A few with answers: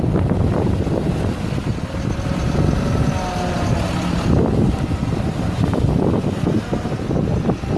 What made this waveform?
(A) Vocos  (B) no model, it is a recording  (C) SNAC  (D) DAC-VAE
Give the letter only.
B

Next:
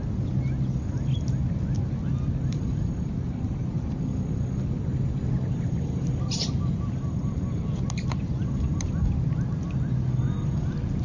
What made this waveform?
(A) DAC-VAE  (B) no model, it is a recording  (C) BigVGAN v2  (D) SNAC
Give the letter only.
B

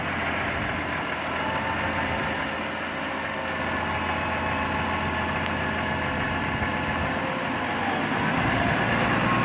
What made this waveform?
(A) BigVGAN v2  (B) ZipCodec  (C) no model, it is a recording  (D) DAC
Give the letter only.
C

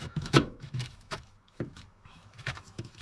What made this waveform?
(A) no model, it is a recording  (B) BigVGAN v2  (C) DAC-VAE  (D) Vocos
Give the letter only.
C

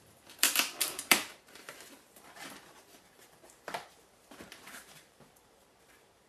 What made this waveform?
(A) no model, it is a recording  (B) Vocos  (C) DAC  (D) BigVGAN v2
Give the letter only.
D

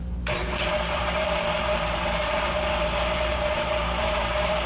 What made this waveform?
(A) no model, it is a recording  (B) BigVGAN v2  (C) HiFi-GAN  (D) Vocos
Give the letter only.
B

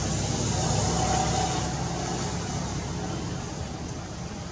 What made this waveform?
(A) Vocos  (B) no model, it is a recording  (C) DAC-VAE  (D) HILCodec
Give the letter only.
B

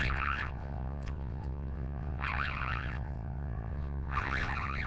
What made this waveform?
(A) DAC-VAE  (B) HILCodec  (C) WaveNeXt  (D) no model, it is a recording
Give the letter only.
C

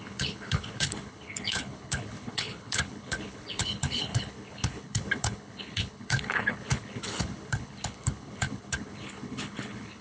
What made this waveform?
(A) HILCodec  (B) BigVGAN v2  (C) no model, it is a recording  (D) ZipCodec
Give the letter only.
A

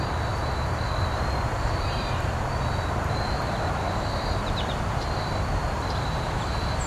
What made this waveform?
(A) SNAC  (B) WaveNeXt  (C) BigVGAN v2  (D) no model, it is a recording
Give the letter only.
C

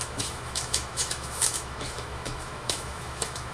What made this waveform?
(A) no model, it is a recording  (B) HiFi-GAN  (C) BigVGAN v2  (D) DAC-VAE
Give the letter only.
D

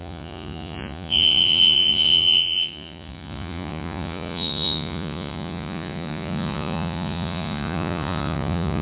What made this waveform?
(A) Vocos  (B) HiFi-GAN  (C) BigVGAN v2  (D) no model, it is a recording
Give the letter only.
A